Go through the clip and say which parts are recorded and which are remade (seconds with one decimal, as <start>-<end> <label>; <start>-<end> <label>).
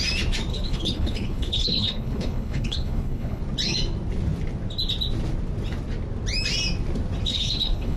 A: 0.0-0.5 recorded; 0.5-3.4 remade; 3.4-7.3 recorded; 7.3-8.0 remade